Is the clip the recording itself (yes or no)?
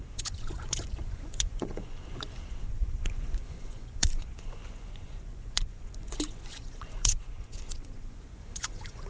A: no